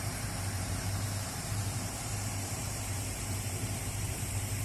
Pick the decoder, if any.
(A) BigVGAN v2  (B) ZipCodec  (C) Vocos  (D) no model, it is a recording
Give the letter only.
A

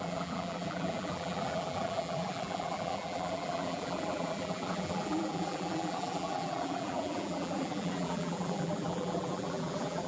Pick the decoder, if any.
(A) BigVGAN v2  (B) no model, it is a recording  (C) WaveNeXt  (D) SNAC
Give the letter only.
A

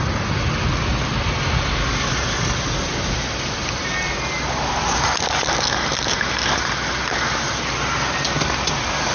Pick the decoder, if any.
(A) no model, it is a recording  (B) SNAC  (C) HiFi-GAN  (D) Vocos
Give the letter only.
A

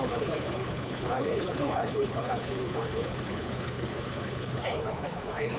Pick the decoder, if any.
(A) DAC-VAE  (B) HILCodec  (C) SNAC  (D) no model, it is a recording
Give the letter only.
B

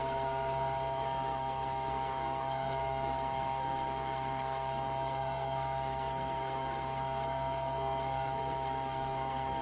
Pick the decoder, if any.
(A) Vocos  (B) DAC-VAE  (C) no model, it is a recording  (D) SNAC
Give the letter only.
D